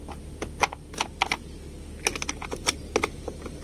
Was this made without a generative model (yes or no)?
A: yes